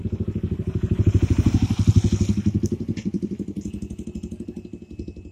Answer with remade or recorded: recorded